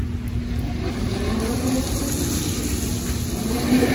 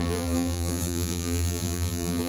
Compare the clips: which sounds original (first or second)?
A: first